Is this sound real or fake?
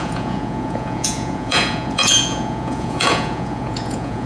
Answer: fake